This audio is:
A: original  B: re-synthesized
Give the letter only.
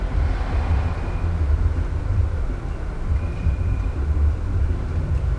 A